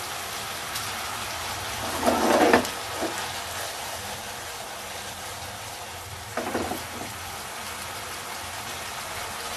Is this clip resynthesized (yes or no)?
no